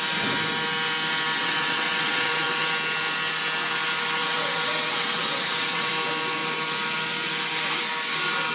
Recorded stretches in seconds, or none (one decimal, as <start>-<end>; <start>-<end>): 0.0-1.4; 2.7-4.2; 5.9-8.5